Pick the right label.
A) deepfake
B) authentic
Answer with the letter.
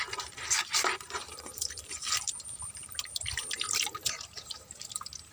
A